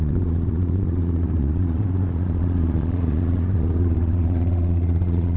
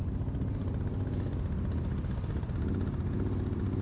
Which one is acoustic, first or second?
second